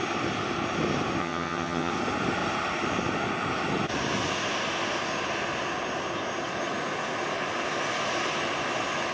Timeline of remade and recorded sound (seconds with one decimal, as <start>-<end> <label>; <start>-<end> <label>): 0.0-1.2 recorded; 1.2-1.9 remade; 1.9-9.1 recorded